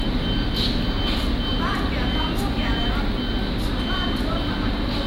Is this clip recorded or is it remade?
recorded